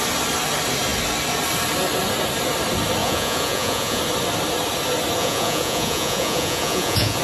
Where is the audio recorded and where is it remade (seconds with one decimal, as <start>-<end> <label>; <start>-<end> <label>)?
0.0-3.0 recorded; 3.0-4.0 remade; 4.0-5.2 recorded; 5.2-7.2 remade